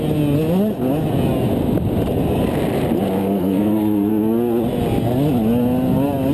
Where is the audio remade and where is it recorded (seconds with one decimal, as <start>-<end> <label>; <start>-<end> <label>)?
0.0-3.2 recorded; 3.2-4.1 remade; 4.1-6.3 recorded